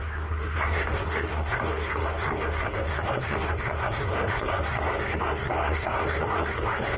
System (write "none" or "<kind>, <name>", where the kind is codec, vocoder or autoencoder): codec, SNAC